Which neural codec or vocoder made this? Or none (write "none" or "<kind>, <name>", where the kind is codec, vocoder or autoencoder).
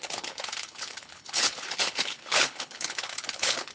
codec, HILCodec